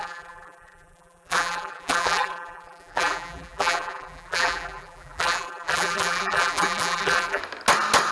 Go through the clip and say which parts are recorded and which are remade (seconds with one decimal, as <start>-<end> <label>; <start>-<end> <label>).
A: 0.0-7.4 remade; 7.4-8.1 recorded